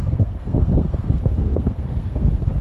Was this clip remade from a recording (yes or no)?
yes